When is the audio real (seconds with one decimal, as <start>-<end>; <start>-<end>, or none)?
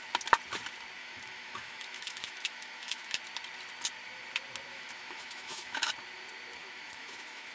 0.0-1.0; 3.2-4.7; 5.9-6.6